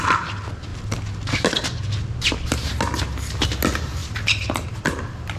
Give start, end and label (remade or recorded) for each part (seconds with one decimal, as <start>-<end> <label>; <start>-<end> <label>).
0.0-4.0 recorded; 4.0-4.8 remade; 4.8-5.4 recorded